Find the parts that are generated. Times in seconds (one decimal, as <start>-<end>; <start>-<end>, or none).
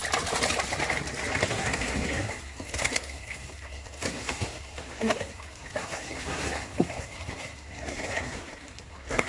1.5-9.3